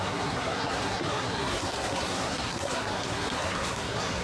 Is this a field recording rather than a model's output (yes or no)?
no